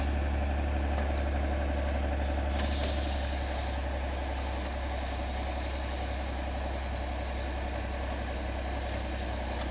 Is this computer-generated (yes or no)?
no